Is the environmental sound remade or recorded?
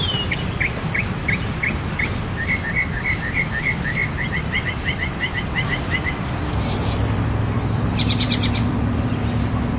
remade